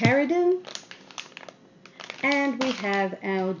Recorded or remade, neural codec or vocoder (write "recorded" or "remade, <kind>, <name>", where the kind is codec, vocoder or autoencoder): recorded